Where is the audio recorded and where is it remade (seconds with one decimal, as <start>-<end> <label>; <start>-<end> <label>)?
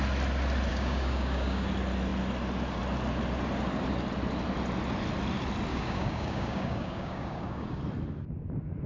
0.0-0.7 recorded; 0.7-1.7 remade; 1.7-5.7 recorded; 5.7-7.8 remade; 7.8-8.9 recorded